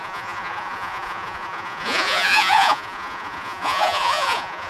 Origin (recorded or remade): remade